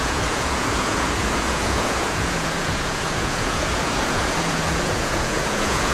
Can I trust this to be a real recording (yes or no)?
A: no